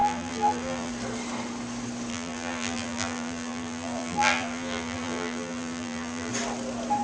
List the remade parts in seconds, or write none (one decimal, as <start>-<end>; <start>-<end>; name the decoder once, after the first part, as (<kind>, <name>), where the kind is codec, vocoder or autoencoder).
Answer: 0.0-0.9 (vocoder, BigVGAN v2); 2.1-6.3